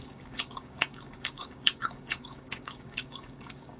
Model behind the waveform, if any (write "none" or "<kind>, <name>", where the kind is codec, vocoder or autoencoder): codec, DAC